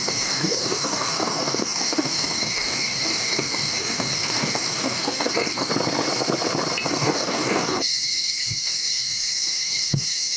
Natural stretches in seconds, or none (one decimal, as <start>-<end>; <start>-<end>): 5.7-6.9